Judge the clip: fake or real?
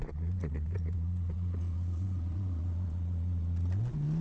fake